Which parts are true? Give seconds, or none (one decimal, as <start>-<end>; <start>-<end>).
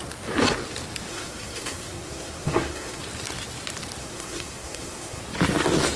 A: 0.0-1.1; 3.0-4.0; 5.2-6.0